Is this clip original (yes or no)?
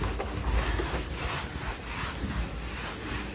yes